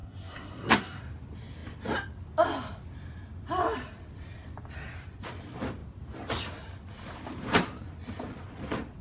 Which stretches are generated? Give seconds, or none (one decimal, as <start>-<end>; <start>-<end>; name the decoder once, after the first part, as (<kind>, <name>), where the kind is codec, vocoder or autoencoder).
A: 0.0-1.0 (codec, SNAC)